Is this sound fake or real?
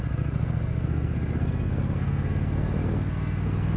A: fake